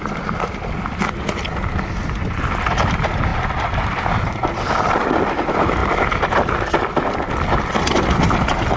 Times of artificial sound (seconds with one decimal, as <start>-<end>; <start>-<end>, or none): none